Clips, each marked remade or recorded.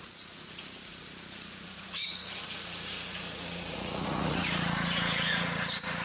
remade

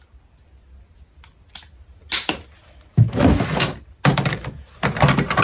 recorded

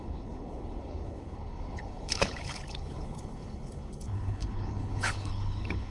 remade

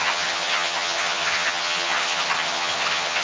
remade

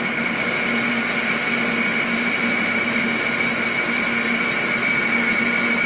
recorded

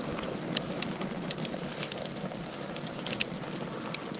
recorded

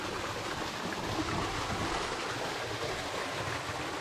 recorded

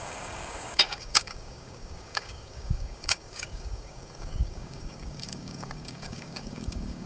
remade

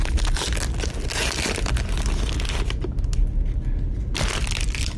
recorded